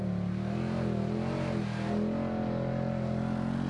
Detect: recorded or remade recorded